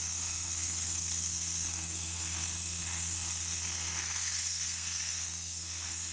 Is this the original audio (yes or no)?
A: no